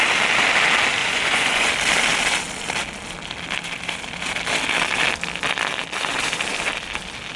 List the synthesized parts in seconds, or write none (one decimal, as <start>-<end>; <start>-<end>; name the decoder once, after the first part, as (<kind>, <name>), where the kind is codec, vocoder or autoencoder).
1.0-1.7 (vocoder, Vocos)